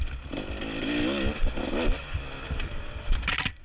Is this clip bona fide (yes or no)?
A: yes